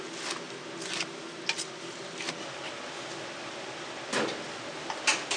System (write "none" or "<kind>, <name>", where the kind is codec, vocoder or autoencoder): none